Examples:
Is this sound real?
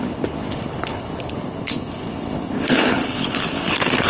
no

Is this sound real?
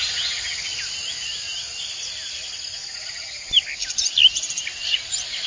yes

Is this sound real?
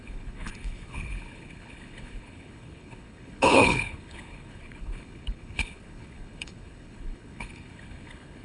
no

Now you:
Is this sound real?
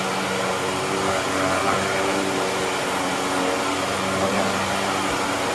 yes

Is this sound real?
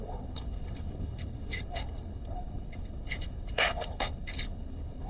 no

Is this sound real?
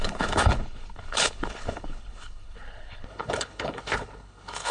no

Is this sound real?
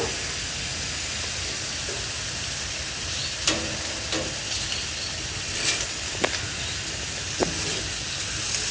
yes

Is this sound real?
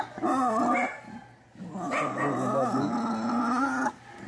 yes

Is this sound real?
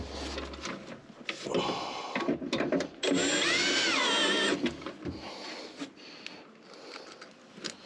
yes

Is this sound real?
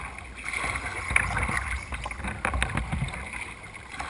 yes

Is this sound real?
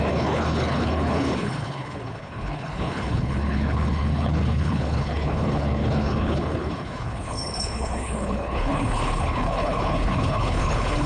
no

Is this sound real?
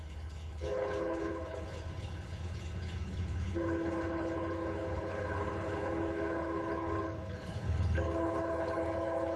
no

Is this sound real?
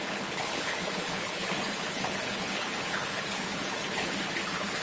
no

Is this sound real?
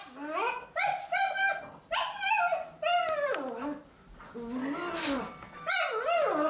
yes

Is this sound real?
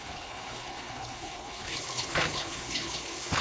no